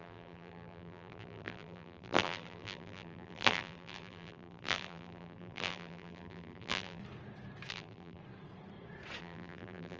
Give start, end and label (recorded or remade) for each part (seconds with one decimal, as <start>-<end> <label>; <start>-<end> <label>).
0.0-7.0 remade; 7.0-7.7 recorded; 7.7-8.2 remade; 8.2-9.2 recorded; 9.2-10.0 remade